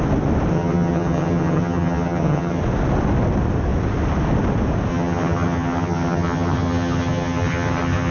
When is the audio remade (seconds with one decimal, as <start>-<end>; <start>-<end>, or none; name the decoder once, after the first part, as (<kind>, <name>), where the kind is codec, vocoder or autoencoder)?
0.5-2.6 (vocoder, HiFi-GAN); 4.9-8.1